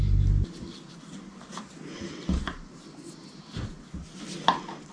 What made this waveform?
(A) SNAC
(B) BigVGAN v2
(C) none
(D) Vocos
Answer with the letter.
C